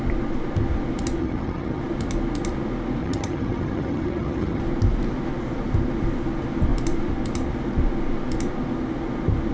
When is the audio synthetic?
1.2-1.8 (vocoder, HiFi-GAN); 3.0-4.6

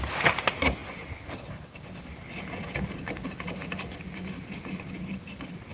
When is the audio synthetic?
none

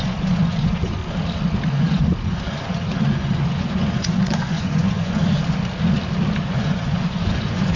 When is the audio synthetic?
0.0-1.0 (vocoder, Vocos); 1.7-5.2; 6.4-7.8

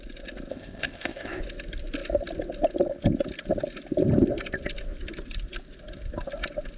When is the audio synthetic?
0.5-1.4 (codec, ZipCodec)